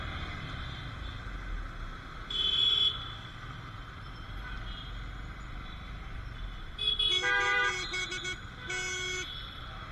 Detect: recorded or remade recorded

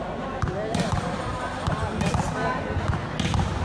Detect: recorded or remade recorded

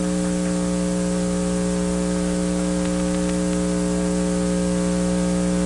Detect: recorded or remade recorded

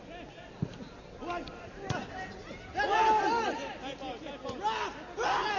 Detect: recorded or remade recorded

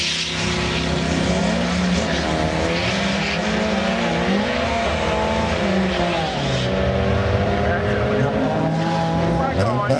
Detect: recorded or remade recorded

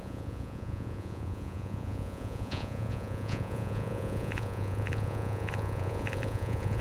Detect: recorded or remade remade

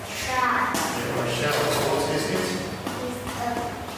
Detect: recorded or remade recorded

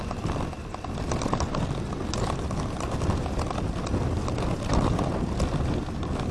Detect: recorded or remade recorded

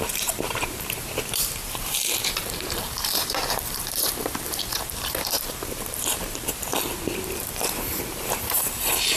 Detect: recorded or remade remade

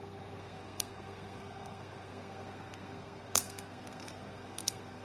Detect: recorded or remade remade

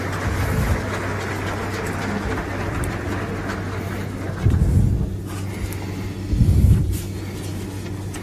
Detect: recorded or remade recorded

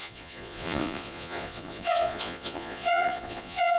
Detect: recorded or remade remade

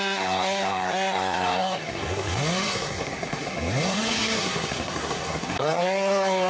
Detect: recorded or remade remade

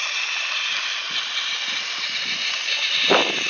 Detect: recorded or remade recorded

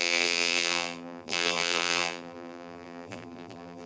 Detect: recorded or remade remade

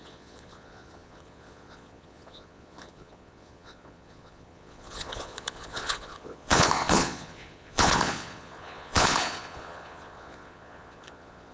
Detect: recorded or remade remade